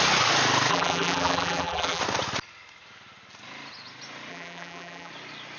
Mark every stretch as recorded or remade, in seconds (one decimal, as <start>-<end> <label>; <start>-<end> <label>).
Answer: 0.0-0.7 recorded; 0.7-2.0 remade; 2.0-4.3 recorded; 4.3-5.1 remade; 5.1-5.6 recorded